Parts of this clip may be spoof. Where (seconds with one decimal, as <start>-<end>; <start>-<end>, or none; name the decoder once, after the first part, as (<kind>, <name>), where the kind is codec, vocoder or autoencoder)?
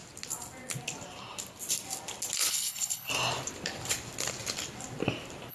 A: 2.5-3.1 (codec, HILCodec)